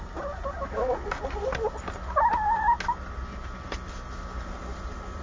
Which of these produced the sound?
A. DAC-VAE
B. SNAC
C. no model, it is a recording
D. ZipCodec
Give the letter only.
C